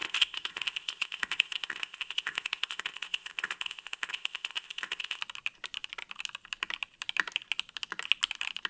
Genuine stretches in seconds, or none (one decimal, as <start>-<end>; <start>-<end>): 5.2-8.7